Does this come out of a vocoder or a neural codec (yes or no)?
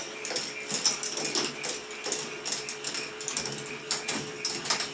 no